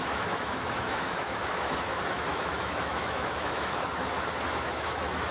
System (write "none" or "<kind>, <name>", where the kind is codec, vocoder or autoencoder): autoencoder, DAC-VAE